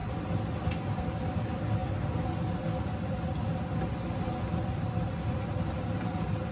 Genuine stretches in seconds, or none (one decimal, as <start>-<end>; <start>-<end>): 0.0-6.5